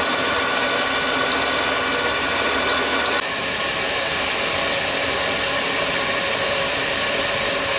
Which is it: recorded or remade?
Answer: recorded